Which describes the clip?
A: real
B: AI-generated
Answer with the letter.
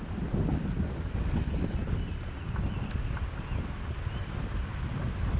A